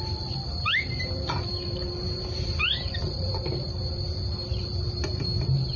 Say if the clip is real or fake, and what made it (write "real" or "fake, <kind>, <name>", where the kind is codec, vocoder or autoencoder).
fake, vocoder, BigVGAN v2